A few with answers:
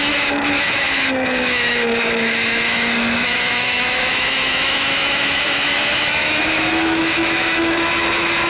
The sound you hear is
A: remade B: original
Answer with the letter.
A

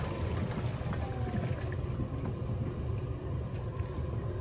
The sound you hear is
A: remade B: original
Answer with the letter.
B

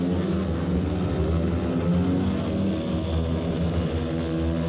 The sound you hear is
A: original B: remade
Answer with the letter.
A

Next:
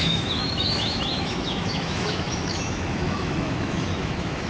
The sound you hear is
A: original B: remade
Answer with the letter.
B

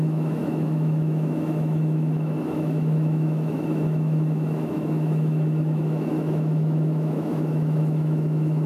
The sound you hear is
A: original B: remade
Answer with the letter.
B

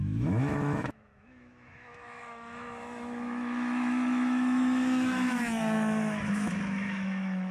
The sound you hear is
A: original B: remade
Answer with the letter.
B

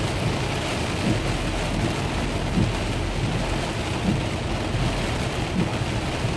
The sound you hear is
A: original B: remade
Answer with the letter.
A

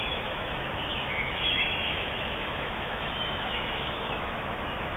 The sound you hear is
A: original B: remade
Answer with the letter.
B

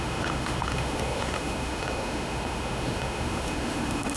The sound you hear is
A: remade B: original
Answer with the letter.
A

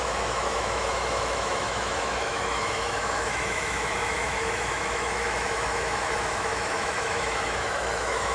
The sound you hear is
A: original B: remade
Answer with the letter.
B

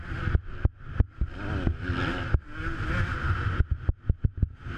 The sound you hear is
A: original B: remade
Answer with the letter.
A